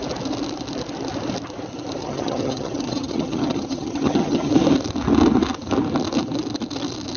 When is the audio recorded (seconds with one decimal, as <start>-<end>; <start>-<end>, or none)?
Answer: 0.0-2.0; 4.5-7.2